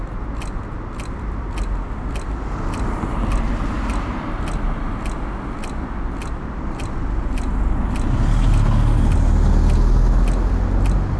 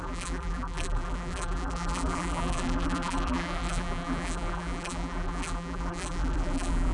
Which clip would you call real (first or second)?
first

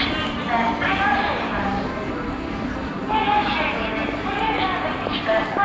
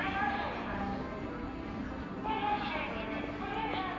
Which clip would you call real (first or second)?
second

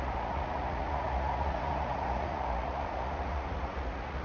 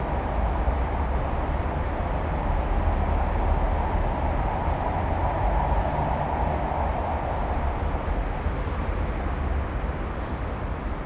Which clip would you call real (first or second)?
second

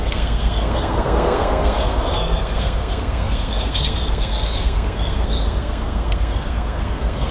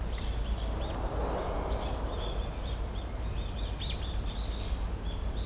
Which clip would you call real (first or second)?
second